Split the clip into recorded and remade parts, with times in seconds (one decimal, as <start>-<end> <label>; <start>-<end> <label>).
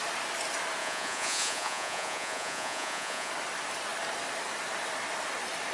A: 0.0-0.8 recorded; 0.8-3.3 remade; 3.3-5.7 recorded